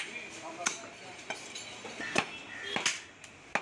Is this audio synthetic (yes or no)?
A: no